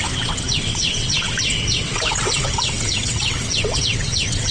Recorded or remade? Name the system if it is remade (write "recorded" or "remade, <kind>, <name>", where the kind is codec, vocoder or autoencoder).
remade, vocoder, WaveNeXt